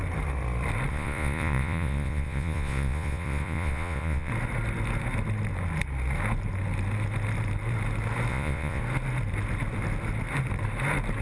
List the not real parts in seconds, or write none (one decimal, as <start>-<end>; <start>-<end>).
0.9-4.3; 8.3-8.8